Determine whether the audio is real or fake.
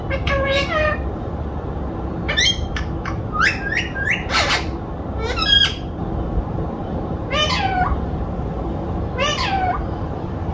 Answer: fake